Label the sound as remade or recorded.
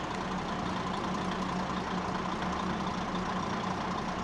recorded